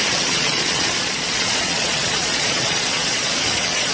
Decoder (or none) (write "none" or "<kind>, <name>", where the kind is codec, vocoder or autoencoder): vocoder, Vocos